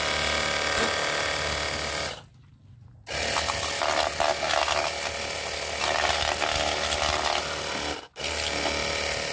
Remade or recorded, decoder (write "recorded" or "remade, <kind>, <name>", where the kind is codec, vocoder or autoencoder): recorded